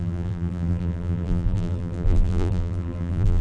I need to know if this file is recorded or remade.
remade